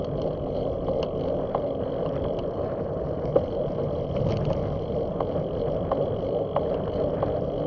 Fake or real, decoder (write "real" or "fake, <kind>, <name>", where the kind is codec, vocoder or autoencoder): real